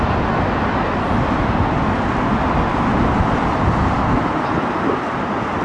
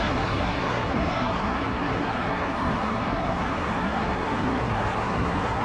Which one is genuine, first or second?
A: first